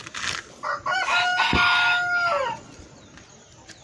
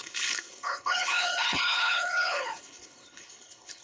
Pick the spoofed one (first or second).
second